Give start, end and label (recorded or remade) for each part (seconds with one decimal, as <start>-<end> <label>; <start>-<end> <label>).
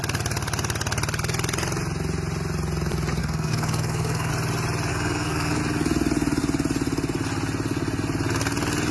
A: 0.0-3.2 recorded; 3.2-4.3 remade; 4.3-4.9 recorded; 4.9-5.6 remade; 5.6-8.9 recorded